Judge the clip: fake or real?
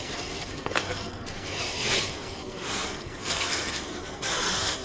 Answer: fake